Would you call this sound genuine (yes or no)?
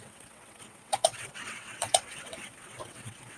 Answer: no